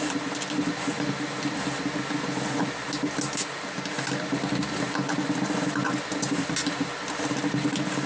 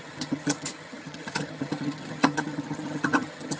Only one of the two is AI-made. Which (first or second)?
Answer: second